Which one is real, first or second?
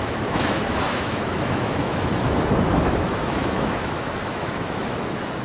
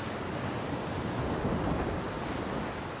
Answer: second